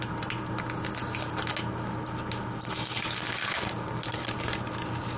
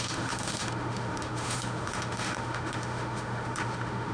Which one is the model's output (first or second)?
second